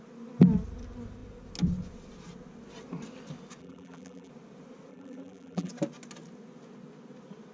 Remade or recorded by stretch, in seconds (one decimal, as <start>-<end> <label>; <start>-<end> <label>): 0.0-3.6 recorded; 3.6-4.3 remade; 4.3-4.9 recorded; 4.9-5.7 remade; 5.7-7.5 recorded